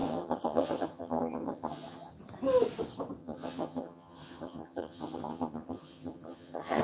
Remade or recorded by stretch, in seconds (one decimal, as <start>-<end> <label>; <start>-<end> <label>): 0.0-2.1 remade; 2.1-3.2 recorded; 3.2-6.8 remade